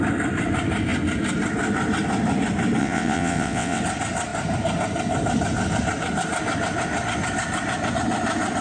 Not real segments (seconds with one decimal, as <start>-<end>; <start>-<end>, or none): 2.8-3.8